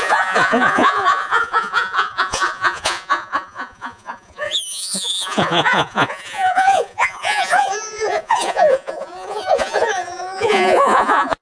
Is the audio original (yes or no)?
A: no